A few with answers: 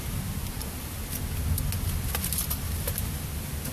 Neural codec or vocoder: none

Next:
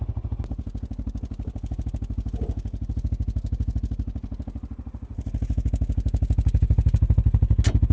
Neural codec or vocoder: none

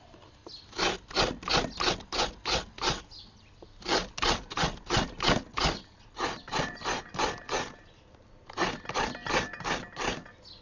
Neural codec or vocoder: none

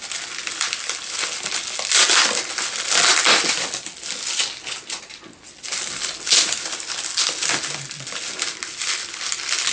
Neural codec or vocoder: none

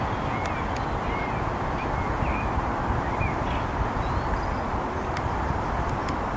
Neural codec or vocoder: vocoder, BigVGAN v2